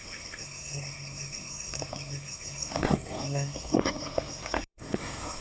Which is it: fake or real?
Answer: fake